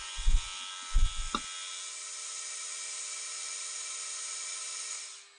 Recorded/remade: recorded